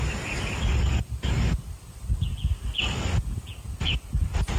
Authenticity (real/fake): real